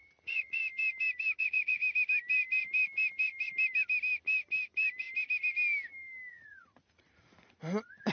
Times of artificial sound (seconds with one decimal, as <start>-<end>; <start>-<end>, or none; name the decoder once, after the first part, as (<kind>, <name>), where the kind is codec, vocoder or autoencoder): 0.0-0.6 (vocoder, Vocos); 1.4-1.8; 6.3-8.1